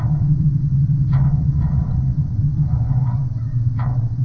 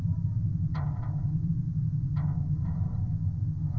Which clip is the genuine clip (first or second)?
second